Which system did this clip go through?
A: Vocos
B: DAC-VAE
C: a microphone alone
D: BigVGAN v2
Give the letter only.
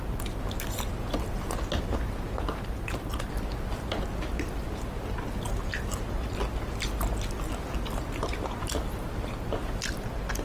C